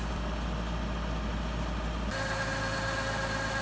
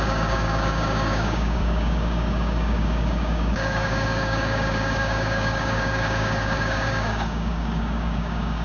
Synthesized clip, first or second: second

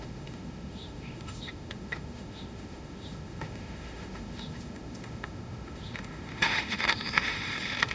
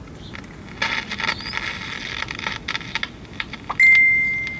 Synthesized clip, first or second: first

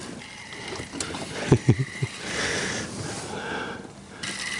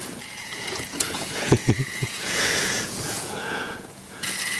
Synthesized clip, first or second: second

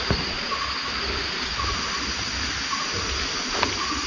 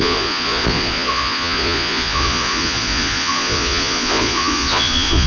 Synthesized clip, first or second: second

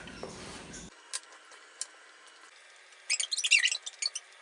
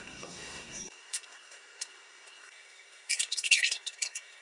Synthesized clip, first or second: second